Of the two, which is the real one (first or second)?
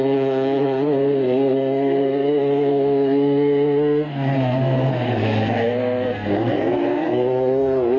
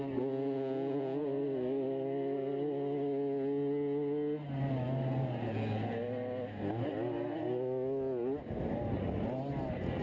second